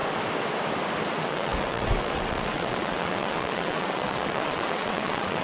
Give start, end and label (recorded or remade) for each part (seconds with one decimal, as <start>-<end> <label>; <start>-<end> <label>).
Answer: 0.0-1.1 recorded; 1.1-5.4 remade

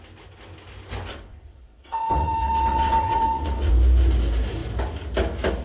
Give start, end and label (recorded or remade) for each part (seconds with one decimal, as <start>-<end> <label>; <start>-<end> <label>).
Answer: 0.0-1.1 recorded; 1.1-3.7 remade; 3.7-5.6 recorded

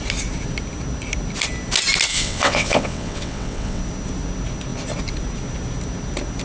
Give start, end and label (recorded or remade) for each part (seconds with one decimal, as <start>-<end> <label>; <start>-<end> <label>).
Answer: 0.0-2.1 recorded; 2.1-3.8 remade; 3.8-6.4 recorded

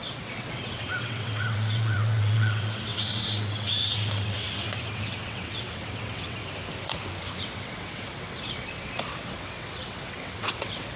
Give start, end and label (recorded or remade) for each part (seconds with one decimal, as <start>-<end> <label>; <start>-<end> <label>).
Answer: 0.0-6.4 remade; 6.4-7.4 recorded; 7.4-11.0 remade

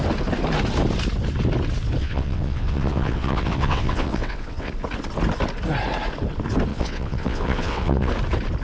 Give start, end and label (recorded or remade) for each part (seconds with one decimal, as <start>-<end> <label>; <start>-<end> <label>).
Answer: 0.0-2.0 recorded; 2.0-4.7 remade; 4.7-6.7 recorded; 6.7-8.1 remade; 8.1-8.6 recorded